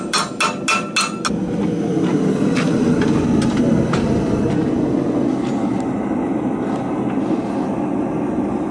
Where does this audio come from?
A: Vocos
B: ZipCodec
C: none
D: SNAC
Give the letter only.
C